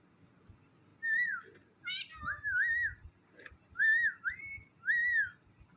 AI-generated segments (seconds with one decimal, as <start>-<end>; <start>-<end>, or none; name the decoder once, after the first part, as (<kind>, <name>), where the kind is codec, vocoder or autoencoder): none